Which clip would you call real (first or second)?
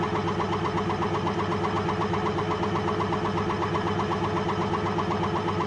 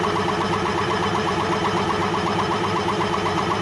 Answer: first